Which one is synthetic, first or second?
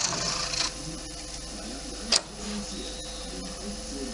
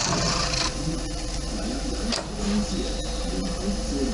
second